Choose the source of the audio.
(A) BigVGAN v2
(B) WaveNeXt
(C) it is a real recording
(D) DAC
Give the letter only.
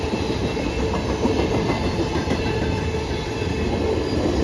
C